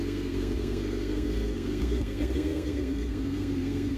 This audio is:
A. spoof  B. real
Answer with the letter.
A